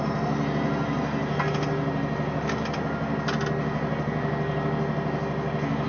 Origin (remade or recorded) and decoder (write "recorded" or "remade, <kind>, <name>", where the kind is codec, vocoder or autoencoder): recorded